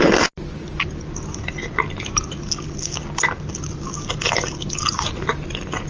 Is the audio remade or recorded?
recorded